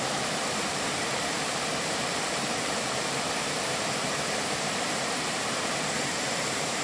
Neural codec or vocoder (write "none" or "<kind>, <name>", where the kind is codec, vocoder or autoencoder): vocoder, BigVGAN v2